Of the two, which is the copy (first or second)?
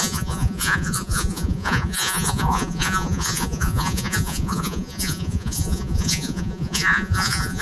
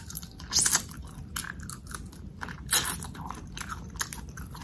first